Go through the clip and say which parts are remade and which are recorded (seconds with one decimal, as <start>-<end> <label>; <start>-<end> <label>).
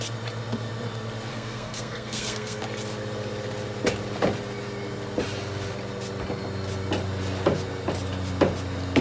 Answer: 0.0-1.3 recorded; 1.3-2.6 remade; 2.6-9.0 recorded